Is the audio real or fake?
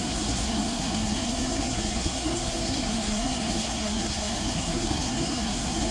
fake